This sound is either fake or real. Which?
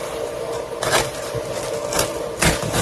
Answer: real